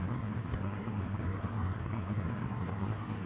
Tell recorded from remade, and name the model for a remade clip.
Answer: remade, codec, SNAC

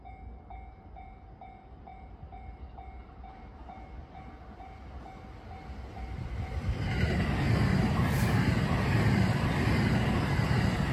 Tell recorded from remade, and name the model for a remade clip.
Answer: recorded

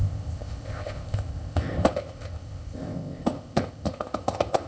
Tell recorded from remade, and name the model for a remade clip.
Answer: remade, codec, ZipCodec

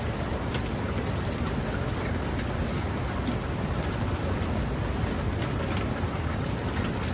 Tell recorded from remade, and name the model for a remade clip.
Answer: recorded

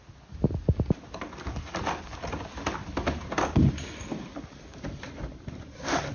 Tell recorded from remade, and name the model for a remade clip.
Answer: recorded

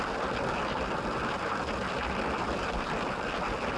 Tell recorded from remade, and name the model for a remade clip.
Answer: recorded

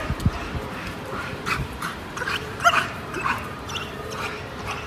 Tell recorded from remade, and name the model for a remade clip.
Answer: remade, vocoder, BigVGAN v2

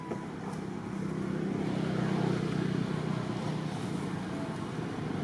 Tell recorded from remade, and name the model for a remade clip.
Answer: recorded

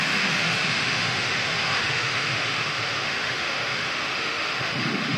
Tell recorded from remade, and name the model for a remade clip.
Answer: remade, autoencoder, DAC-VAE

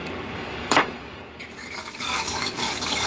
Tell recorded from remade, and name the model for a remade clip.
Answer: remade, codec, DAC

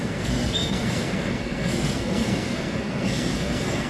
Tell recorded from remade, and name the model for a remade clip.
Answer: remade, codec, SNAC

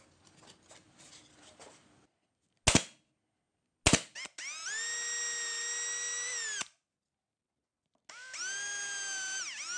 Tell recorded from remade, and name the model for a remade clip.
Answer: recorded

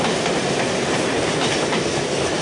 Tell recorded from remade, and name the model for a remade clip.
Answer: recorded